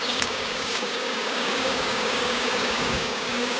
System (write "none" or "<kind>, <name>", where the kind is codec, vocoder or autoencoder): codec, DAC